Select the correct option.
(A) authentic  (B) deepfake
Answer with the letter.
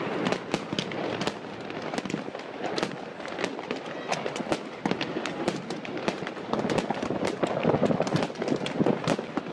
A